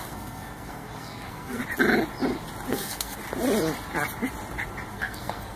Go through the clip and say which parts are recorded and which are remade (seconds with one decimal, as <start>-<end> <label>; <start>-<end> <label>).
0.0-1.6 remade; 1.6-2.7 recorded; 2.7-3.2 remade; 3.2-4.9 recorded; 4.9-5.6 remade